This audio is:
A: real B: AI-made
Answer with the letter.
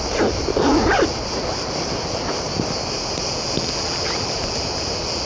A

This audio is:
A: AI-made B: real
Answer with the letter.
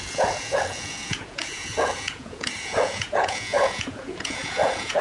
A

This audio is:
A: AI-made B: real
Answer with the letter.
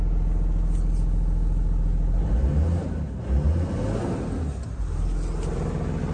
B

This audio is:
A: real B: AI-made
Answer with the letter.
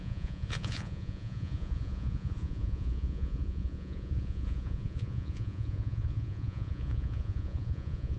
B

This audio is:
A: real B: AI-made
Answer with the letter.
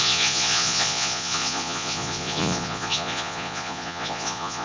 B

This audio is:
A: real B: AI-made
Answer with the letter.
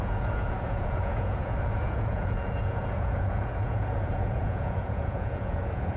B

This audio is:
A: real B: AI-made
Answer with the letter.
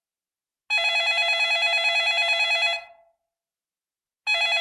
A